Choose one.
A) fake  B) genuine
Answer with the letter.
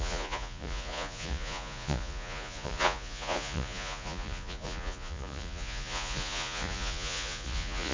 A